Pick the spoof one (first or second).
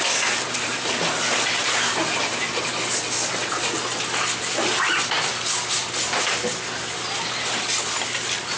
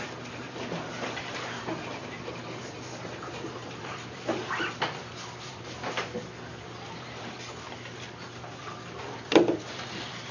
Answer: second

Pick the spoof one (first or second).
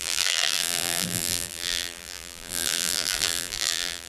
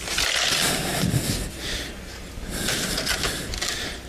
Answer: first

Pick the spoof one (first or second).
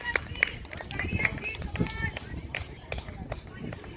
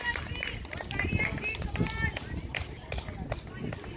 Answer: first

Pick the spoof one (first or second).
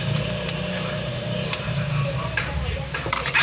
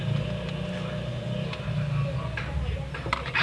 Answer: first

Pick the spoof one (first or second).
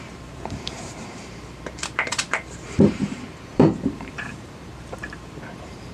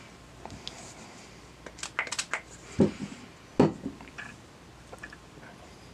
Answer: first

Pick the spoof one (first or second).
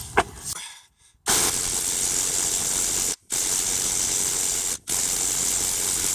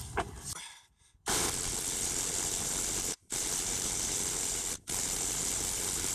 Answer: second